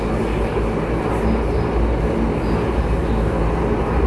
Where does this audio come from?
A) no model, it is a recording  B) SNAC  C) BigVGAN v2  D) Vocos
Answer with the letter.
A